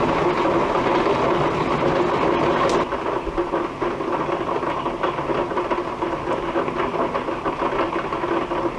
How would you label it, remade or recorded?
recorded